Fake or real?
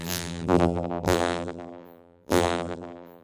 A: fake